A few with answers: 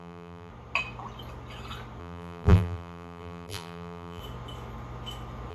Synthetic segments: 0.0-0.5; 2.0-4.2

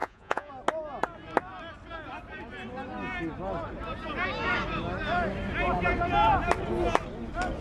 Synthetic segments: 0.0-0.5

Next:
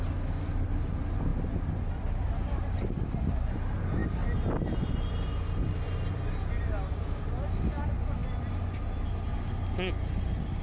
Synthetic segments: none

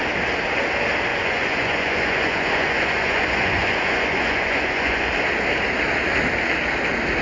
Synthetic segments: 1.1-5.1

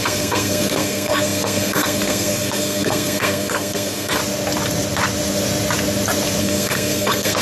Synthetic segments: 0.0-4.2; 6.4-7.4